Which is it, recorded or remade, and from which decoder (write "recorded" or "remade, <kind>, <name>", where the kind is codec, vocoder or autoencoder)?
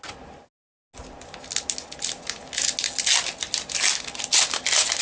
recorded